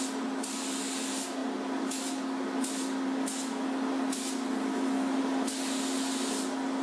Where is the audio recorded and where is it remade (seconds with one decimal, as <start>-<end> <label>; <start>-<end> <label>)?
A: 0.0-6.8 recorded